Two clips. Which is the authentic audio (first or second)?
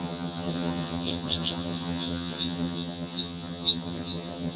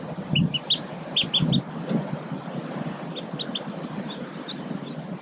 second